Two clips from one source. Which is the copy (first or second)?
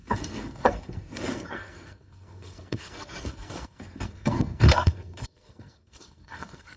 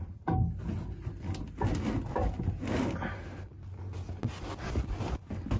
first